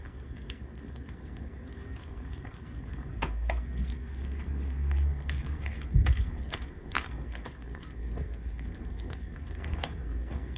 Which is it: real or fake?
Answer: fake